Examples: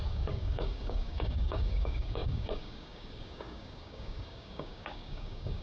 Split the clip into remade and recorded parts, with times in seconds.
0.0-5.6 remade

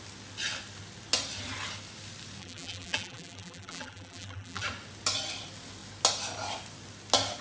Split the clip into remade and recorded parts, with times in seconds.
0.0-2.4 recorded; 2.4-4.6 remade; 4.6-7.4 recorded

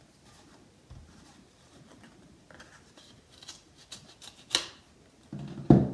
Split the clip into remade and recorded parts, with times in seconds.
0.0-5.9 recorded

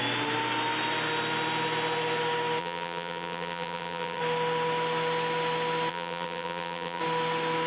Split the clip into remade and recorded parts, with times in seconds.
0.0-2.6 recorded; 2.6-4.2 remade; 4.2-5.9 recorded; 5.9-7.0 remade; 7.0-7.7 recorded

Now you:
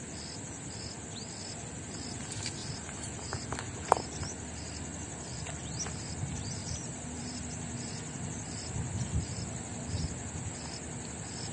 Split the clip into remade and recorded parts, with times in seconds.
0.0-2.6 recorded; 2.6-3.6 remade; 3.6-6.6 recorded; 6.6-7.4 remade; 7.4-11.5 recorded

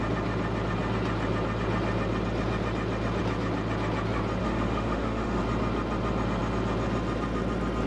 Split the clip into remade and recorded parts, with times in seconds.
0.0-4.4 recorded; 4.4-5.4 remade; 5.4-7.9 recorded

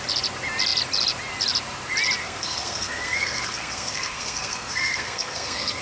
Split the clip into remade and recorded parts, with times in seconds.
0.0-2.2 recorded; 2.2-5.8 remade

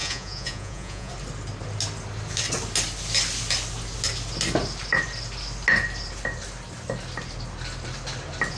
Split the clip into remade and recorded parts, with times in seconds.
0.0-1.1 remade; 1.1-8.6 recorded